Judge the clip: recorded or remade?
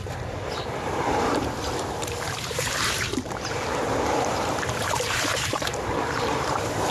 remade